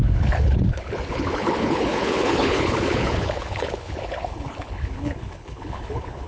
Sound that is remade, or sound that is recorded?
remade